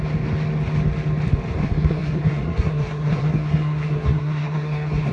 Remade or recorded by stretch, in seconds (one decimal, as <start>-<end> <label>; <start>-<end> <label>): 0.0-1.6 recorded; 1.6-5.1 remade